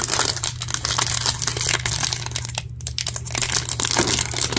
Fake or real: real